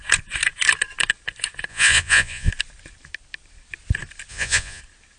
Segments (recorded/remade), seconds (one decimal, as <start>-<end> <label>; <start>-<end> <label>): 0.0-1.7 recorded; 1.7-2.5 remade; 2.5-4.3 recorded; 4.3-4.8 remade; 4.8-5.2 recorded